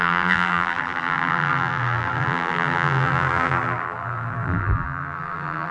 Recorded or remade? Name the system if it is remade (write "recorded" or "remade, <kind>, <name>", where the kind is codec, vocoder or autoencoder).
remade, vocoder, BigVGAN v2